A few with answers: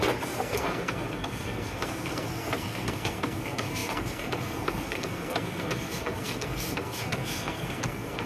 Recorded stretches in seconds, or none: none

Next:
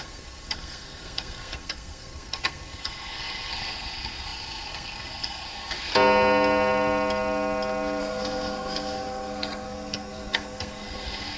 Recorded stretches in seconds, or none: 5.9-8.0